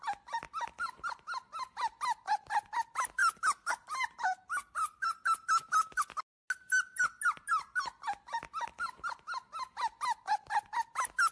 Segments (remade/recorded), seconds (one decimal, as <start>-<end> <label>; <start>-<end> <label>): 0.0-11.3 recorded